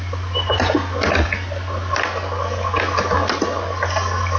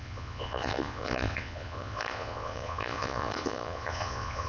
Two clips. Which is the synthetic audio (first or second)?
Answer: second